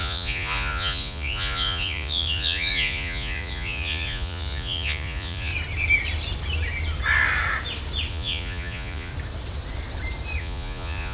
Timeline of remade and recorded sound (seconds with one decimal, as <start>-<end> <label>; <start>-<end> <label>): 0.0-5.5 remade; 5.5-8.1 recorded; 8.1-9.1 remade; 9.1-10.4 recorded; 10.4-11.1 remade